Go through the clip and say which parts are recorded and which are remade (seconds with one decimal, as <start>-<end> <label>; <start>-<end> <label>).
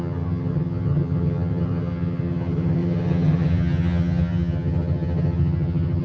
0.0-6.0 remade